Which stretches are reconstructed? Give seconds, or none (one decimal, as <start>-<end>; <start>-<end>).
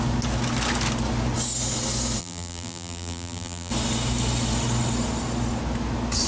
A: 2.2-3.7